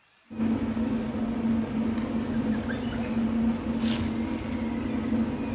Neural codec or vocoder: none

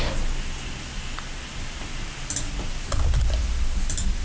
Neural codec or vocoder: none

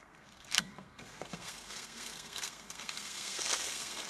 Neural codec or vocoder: codec, SNAC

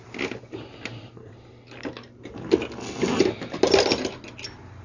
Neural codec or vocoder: none